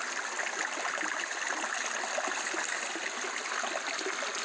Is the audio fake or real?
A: real